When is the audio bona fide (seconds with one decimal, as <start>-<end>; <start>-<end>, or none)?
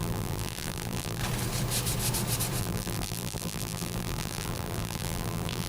1.2-2.6